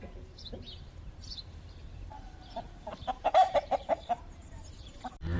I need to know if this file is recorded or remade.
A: remade